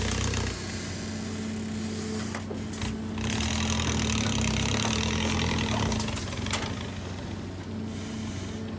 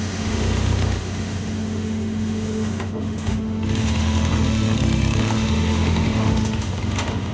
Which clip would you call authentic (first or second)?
first